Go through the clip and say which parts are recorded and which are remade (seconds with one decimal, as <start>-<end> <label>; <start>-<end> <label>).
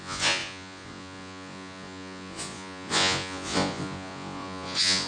0.0-5.1 remade